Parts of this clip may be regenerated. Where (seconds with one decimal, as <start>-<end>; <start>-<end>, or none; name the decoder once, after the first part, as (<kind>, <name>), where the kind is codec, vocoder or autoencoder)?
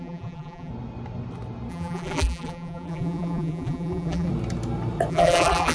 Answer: 0.0-0.7 (vocoder, BigVGAN v2); 1.7-4.3; 5.1-5.7